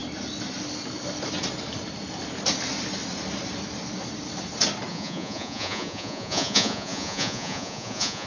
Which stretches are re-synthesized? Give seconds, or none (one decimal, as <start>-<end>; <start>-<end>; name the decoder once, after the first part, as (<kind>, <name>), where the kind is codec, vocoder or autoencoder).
4.9-8.3 (vocoder, Vocos)